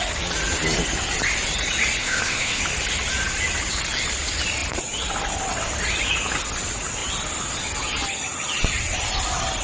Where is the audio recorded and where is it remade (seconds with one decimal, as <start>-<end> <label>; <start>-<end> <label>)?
0.0-2.0 recorded; 2.0-2.6 remade; 2.6-9.6 recorded